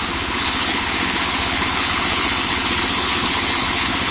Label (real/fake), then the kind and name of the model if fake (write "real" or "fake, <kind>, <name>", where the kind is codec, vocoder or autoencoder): fake, codec, HILCodec